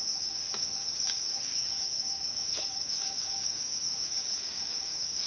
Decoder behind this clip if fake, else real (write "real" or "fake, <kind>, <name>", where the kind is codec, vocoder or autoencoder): fake, codec, DAC